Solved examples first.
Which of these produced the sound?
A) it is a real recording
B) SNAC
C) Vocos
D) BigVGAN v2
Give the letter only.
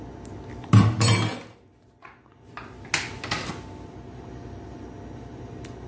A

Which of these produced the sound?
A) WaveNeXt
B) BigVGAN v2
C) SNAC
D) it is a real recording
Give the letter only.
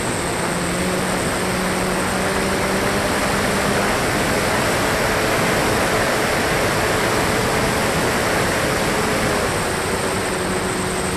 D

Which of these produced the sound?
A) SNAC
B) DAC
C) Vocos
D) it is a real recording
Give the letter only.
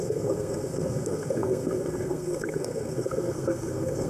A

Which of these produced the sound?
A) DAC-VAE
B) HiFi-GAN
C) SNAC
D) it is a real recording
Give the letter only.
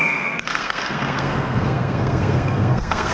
C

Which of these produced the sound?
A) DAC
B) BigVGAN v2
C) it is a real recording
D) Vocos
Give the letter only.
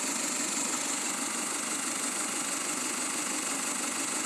D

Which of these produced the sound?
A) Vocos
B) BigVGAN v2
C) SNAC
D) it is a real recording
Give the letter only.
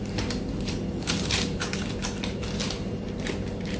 B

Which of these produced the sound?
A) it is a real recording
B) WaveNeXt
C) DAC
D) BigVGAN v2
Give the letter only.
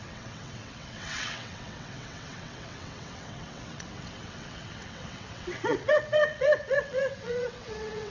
B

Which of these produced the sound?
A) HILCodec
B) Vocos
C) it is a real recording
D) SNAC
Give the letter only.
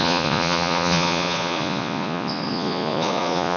B